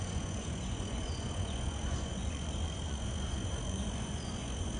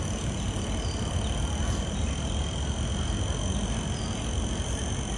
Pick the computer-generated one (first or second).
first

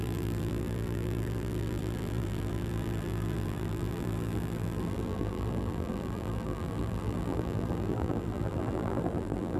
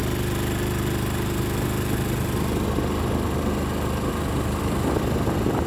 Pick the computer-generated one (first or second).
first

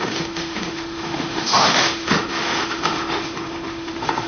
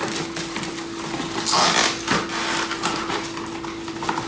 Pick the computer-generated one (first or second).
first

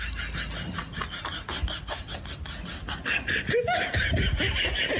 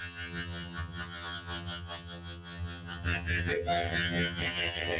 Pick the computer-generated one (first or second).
second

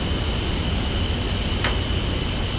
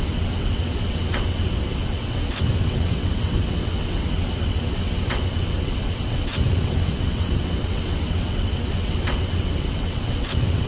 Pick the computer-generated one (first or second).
second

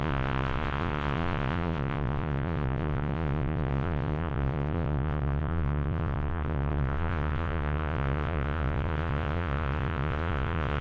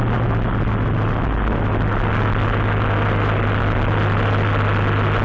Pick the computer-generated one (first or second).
first